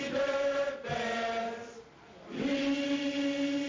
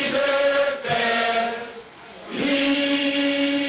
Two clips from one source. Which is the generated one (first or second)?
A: second